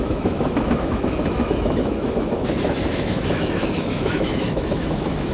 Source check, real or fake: fake